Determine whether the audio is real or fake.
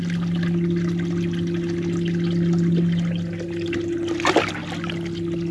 real